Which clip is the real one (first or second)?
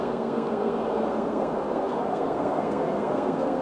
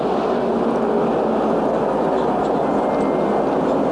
second